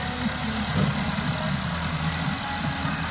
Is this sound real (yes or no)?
yes